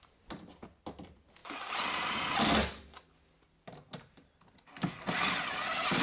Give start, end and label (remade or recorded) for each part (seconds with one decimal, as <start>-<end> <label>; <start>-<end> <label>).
0.0-6.0 recorded